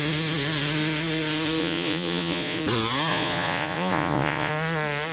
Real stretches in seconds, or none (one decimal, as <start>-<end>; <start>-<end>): 0.0-1.6; 2.6-3.1; 4.5-5.1